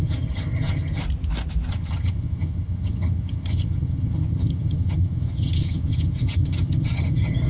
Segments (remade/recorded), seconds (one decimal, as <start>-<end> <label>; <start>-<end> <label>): 0.0-1.0 remade; 1.0-1.7 recorded; 1.7-7.5 remade